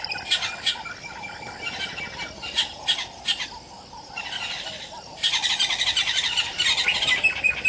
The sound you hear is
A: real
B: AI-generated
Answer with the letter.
A